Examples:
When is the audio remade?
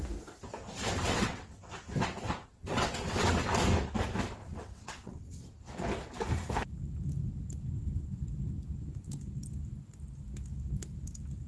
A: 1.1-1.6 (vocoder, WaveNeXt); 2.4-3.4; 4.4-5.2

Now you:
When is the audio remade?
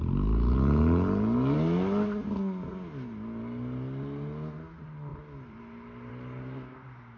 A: none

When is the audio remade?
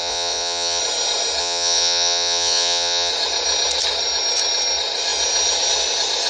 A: 0.0-0.8 (vocoder, Vocos); 1.4-3.1